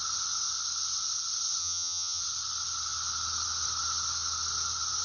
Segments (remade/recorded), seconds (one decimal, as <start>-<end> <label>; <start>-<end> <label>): 0.0-1.6 recorded; 1.6-2.2 remade; 2.2-5.0 recorded